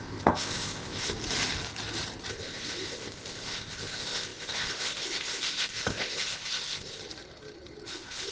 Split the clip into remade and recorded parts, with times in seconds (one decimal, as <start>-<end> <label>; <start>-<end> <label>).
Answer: 0.0-1.1 remade; 1.1-2.3 recorded; 2.3-7.0 remade; 7.0-7.9 recorded; 7.9-8.3 remade